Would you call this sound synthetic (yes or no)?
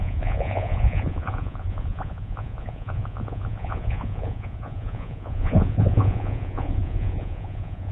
yes